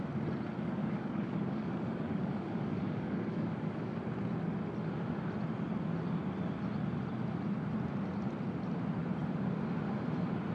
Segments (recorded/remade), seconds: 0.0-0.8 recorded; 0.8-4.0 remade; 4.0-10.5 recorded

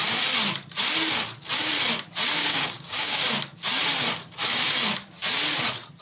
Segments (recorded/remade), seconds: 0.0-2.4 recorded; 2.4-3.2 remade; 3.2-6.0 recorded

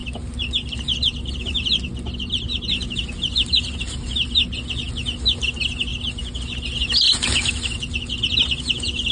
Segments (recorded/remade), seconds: 0.0-9.1 recorded